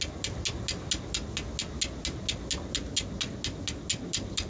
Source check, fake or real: real